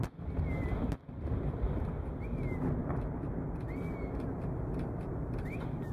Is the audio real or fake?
real